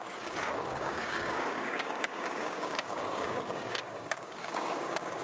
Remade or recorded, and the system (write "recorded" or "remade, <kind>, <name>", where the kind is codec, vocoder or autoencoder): remade, codec, DAC